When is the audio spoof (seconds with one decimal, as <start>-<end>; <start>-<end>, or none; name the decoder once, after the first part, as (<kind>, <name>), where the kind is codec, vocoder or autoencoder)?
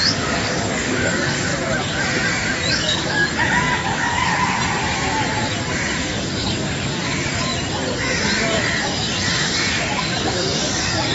0.0-1.5 (codec, DAC); 2.7-4.3; 6.0-7.5; 9.9-11.1